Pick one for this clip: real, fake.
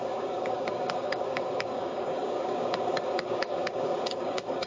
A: fake